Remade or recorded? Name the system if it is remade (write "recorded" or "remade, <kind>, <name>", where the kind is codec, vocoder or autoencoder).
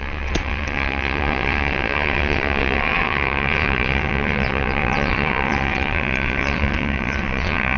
remade, vocoder, WaveNeXt